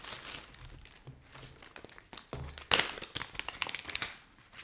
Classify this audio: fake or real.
real